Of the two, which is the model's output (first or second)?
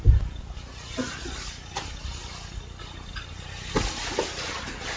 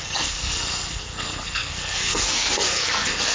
second